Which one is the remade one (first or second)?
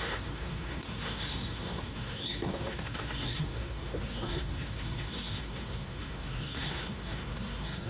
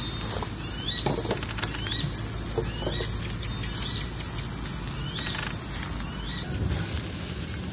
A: first